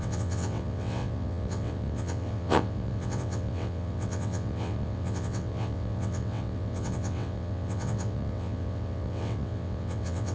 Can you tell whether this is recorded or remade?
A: remade